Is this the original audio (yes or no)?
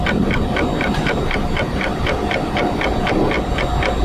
yes